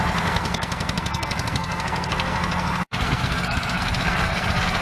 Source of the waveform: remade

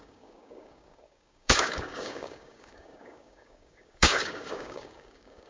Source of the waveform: remade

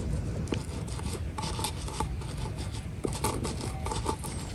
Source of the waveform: recorded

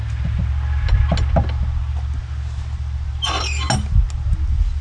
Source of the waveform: recorded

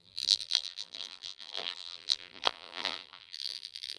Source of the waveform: remade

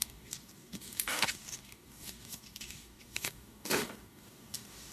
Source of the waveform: remade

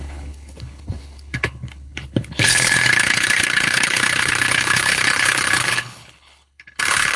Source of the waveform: remade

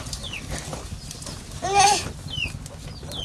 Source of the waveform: recorded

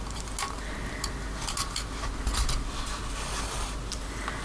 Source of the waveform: recorded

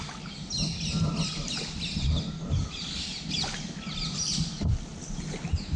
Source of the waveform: recorded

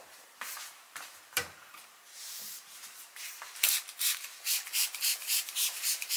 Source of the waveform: remade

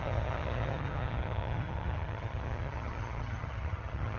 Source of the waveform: remade